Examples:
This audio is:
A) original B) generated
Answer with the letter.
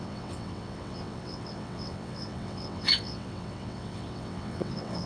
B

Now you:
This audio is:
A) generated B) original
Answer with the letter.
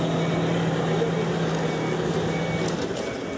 B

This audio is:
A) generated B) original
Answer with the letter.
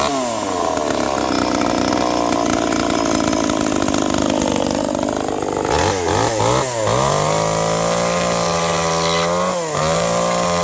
B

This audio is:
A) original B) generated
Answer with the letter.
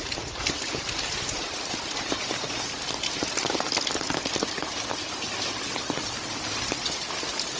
A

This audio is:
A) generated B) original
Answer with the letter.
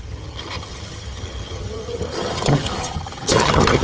A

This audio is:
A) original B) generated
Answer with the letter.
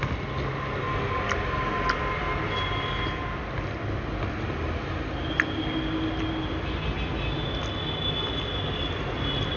A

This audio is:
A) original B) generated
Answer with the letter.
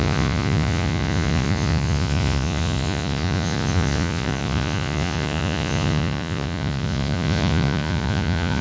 B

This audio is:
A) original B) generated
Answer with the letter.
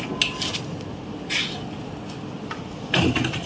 A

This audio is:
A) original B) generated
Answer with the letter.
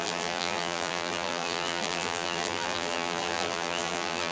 B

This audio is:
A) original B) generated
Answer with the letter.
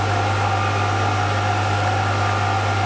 A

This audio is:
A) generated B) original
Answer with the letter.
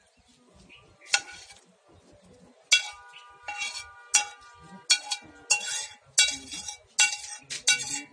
B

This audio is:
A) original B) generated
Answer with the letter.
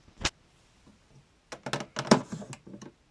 A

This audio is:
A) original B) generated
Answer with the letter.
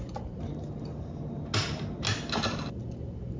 A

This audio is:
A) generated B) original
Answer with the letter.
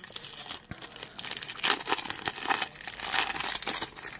B